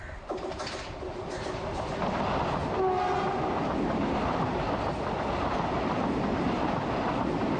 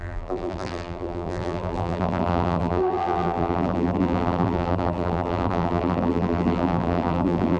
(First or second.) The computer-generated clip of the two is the second